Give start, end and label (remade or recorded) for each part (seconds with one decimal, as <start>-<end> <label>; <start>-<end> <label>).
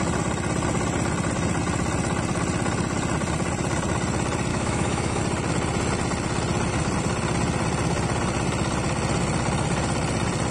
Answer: 0.0-4.5 recorded; 4.5-5.2 remade; 5.2-10.5 recorded